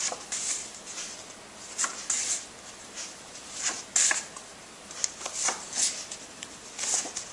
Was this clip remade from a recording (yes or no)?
no